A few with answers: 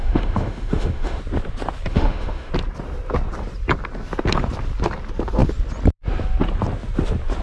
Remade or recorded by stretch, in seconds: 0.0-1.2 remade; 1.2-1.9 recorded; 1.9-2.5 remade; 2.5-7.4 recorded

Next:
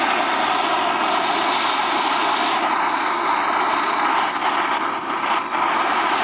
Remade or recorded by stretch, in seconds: 0.0-6.2 recorded

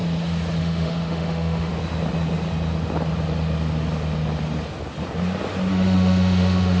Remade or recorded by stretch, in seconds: 0.0-0.6 recorded; 0.6-1.7 remade; 1.7-5.7 recorded; 5.7-6.8 remade

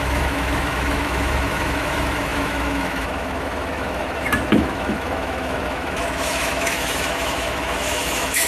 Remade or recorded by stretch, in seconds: 0.0-8.5 remade

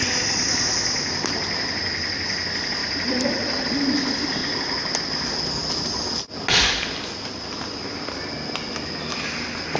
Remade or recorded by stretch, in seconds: 0.0-2.8 recorded; 2.8-3.7 remade; 3.7-9.8 recorded